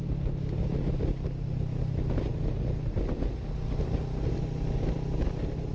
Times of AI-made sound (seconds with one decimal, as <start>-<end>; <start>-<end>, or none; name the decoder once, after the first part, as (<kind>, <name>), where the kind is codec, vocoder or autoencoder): none